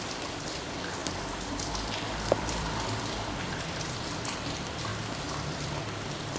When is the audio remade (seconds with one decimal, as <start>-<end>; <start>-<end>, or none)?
0.0-1.0; 1.5-6.4